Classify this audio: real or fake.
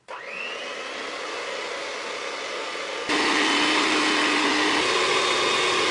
real